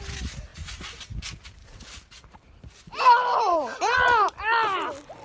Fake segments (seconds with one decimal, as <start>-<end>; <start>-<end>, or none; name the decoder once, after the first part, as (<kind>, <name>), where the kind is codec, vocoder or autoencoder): 1.6-3.8 (vocoder, BigVGAN v2)